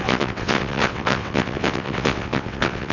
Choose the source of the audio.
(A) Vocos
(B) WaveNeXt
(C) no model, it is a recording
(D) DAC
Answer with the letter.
B